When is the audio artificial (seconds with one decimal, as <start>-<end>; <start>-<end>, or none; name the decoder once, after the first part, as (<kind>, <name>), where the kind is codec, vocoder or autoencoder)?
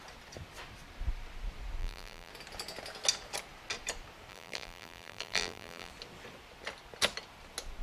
1.8-2.3 (vocoder, BigVGAN v2); 4.3-5.9